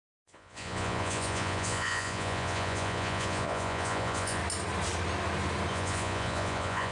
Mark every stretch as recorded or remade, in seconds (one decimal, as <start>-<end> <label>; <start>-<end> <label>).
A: 0.0-4.4 remade; 4.4-5.7 recorded; 5.7-6.9 remade